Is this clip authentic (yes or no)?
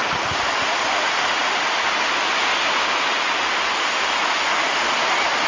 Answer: yes